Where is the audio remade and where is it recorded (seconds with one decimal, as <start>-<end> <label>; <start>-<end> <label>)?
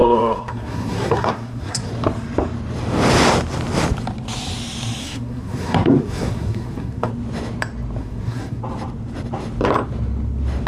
0.0-1.9 remade; 1.9-5.0 recorded; 5.0-7.1 remade; 7.1-8.0 recorded; 8.0-8.6 remade; 8.6-10.7 recorded